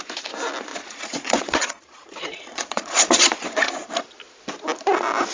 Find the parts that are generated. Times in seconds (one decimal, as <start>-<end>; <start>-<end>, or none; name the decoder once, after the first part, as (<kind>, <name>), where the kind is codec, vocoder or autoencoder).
0.7-3.9 (vocoder, Vocos)